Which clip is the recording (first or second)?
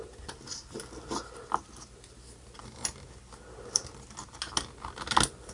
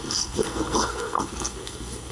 first